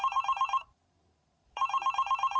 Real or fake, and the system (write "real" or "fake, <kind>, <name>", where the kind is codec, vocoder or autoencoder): fake, vocoder, BigVGAN v2